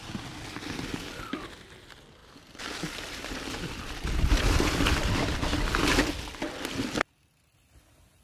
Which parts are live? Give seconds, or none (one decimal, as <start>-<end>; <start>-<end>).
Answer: 0.0-8.2